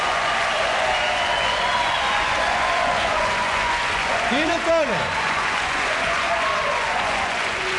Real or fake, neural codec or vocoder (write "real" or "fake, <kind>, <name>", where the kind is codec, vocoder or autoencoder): fake, vocoder, Vocos